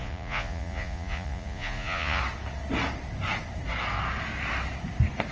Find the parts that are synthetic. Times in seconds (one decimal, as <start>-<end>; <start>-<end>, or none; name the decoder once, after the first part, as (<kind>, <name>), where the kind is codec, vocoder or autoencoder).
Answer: 0.0-2.2 (vocoder, Vocos)